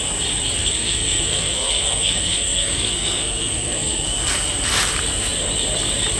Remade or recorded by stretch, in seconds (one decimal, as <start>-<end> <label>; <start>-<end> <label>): 0.0-0.6 recorded; 0.6-4.3 remade; 4.3-6.2 recorded